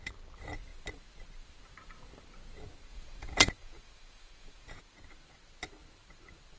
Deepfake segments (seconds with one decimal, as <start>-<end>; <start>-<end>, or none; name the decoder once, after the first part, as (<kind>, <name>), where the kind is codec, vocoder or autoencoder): 2.9-4.8 (vocoder, Vocos)